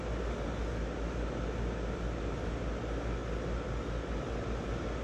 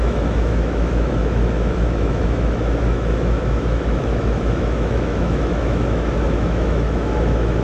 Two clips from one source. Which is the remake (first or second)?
second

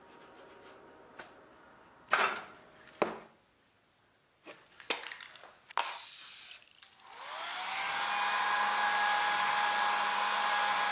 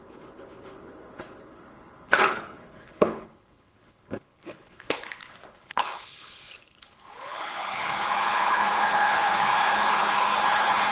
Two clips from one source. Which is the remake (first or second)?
second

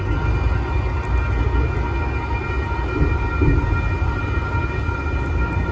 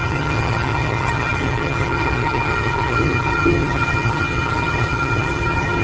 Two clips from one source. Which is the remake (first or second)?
second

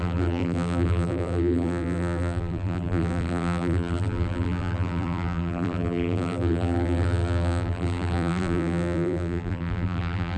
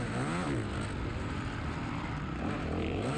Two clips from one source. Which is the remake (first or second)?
first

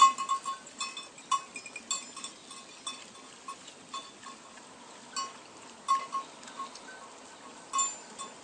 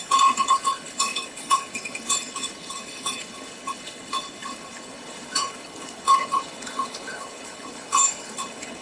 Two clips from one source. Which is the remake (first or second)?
second